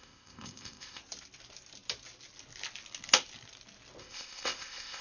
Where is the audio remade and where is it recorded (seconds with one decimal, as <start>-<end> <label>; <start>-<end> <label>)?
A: 0.0-1.0 remade; 1.0-4.0 recorded; 4.0-5.0 remade